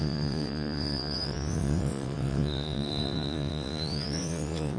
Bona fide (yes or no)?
no